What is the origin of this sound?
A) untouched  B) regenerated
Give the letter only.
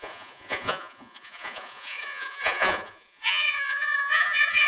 B